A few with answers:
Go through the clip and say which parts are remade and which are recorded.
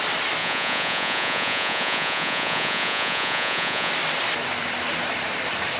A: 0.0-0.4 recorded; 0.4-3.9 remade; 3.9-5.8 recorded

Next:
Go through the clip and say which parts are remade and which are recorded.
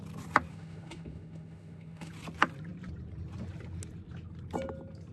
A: 0.0-0.5 recorded; 0.5-2.1 remade; 2.1-5.1 recorded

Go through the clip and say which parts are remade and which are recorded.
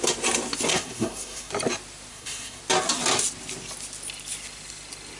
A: 0.0-0.7 recorded; 0.7-1.5 remade; 1.5-2.1 recorded; 2.1-2.6 remade; 2.6-5.2 recorded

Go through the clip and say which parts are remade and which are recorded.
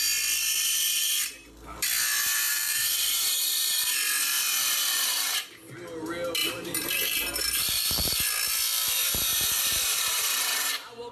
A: 0.0-2.5 recorded; 2.5-3.9 remade; 3.9-6.4 recorded; 6.4-7.8 remade; 7.8-11.1 recorded